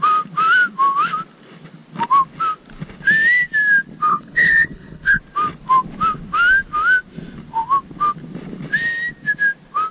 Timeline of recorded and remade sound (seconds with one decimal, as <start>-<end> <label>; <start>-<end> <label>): 0.0-4.1 recorded; 4.1-5.2 remade; 5.2-9.9 recorded